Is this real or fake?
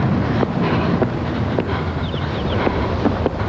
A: fake